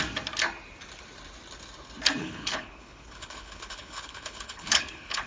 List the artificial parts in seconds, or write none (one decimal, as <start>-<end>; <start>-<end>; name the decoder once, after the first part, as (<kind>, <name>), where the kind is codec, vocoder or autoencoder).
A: 2.2-5.3 (codec, HILCodec)